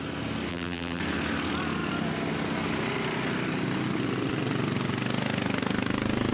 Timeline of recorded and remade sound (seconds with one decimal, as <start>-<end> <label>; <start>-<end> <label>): 0.0-0.5 recorded; 0.5-1.0 remade; 1.0-6.3 recorded